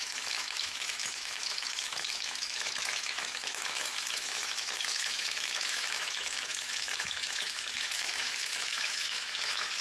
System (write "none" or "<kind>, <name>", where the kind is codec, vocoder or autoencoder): autoencoder, DAC-VAE